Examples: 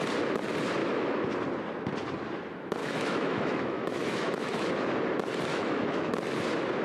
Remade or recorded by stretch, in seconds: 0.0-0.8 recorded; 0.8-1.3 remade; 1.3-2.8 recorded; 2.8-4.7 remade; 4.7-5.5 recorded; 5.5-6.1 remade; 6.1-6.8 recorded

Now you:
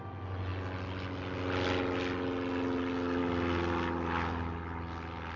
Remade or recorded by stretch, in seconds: 0.0-5.4 recorded

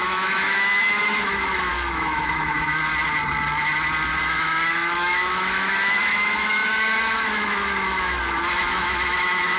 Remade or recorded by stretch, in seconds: 0.0-2.9 remade; 2.9-4.2 recorded; 4.2-9.6 remade

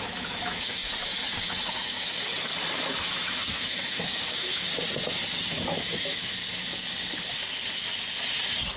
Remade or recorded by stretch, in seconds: 0.0-2.5 remade; 2.5-3.1 recorded; 3.1-4.7 remade; 4.7-5.5 recorded; 5.5-6.4 remade; 6.4-8.8 recorded

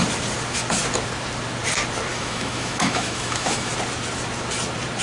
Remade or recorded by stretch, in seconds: 0.0-2.1 recorded; 2.1-3.7 remade; 3.7-5.0 recorded

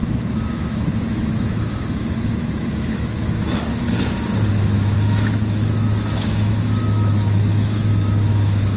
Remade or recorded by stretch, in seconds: 0.0-3.7 remade; 3.7-4.5 recorded; 4.5-8.8 remade

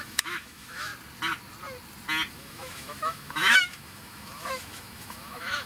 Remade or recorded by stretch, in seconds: 0.0-0.9 remade; 0.9-2.3 recorded; 2.3-5.7 remade

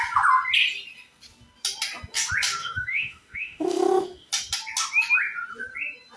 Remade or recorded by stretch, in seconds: 0.0-2.6 recorded; 2.6-4.3 remade; 4.3-6.2 recorded